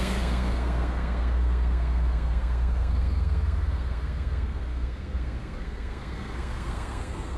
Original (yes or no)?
no